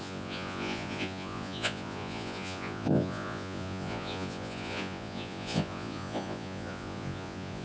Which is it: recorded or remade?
remade